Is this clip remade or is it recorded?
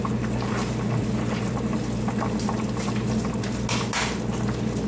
recorded